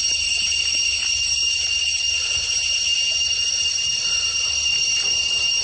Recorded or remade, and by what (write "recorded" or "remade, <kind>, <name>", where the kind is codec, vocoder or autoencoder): recorded